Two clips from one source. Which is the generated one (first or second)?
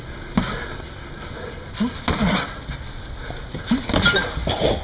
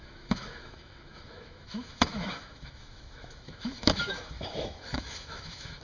second